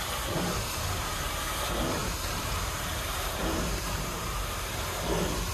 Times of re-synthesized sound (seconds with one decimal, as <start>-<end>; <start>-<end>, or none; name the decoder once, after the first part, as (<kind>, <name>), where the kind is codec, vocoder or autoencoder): 2.0-4.9 (vocoder, BigVGAN v2)